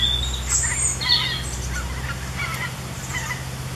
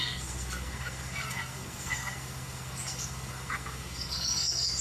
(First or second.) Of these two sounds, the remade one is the second